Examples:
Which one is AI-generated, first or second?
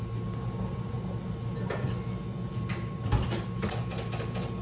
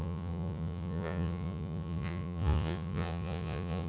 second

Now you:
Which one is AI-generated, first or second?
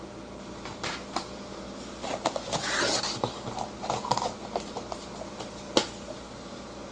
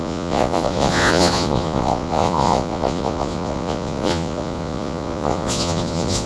second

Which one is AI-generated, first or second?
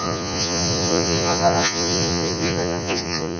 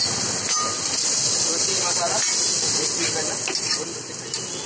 first